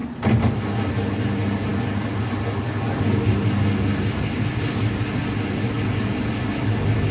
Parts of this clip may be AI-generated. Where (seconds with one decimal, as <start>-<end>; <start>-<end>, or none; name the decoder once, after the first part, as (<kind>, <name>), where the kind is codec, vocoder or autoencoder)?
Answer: none